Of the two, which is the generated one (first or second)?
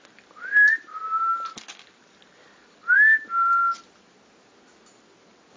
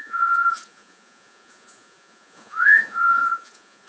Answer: second